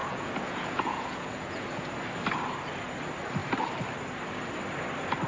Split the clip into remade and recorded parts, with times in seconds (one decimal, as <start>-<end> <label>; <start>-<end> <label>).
0.0-1.9 remade; 1.9-5.3 recorded